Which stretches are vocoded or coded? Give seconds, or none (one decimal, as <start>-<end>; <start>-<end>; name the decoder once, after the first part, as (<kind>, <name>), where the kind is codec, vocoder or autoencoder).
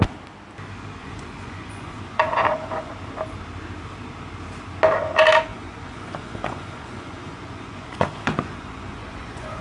1.0-2.9 (vocoder, Vocos); 5.5-9.6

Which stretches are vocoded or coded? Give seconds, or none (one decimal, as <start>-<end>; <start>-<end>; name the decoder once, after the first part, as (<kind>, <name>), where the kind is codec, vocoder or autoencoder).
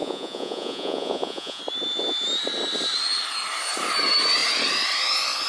0.0-1.6 (vocoder, Vocos)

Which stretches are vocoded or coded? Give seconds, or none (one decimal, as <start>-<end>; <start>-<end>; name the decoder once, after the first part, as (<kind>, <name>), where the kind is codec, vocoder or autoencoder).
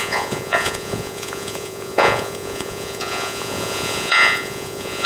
0.0-5.1 (vocoder, Vocos)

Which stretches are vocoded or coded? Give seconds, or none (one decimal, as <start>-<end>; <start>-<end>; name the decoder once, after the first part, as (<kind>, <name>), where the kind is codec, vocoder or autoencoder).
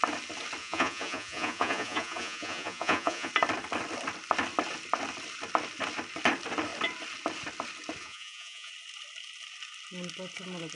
0.6-3.3 (vocoder, Vocos); 8.0-8.7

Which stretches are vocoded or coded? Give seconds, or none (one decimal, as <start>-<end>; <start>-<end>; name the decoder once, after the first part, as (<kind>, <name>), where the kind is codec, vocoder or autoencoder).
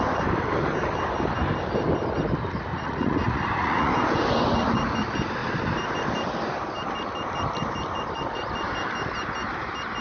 2.7-3.9 (vocoder, Vocos)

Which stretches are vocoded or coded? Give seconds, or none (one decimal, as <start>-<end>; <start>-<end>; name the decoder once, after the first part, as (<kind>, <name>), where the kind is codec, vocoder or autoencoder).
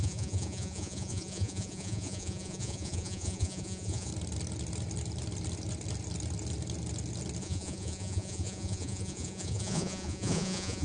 0.0-4.1 (vocoder, Vocos); 7.4-10.8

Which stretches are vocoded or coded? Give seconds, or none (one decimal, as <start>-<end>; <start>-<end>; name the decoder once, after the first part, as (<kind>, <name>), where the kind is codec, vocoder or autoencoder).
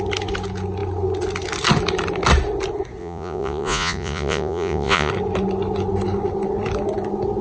3.0-5.1 (vocoder, Vocos)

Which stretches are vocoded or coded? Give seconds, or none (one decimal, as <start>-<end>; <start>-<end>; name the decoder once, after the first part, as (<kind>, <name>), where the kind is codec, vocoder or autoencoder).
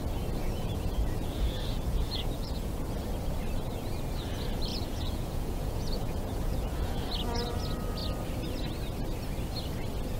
0.4-2.7 (vocoder, Vocos); 4.7-7.0